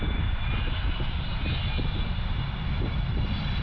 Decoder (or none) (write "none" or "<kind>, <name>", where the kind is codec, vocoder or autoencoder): none